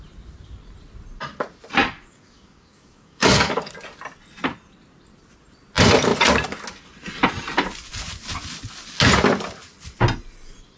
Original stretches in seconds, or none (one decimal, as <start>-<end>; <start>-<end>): 0.0-1.8; 3.7-10.8